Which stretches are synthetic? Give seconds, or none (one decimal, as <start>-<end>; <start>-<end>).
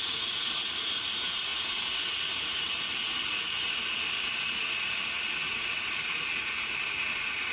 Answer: 0.0-7.5